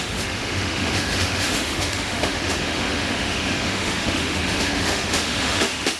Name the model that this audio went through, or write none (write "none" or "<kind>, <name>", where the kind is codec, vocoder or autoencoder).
autoencoder, DAC-VAE